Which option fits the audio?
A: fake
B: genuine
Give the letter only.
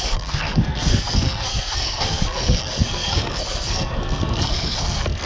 A